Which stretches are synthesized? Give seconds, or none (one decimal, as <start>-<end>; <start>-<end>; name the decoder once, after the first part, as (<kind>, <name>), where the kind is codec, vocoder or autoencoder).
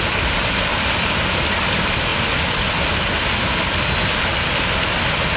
0.7-1.4 (vocoder, BigVGAN v2)